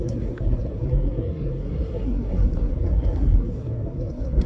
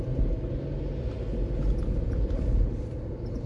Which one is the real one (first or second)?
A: second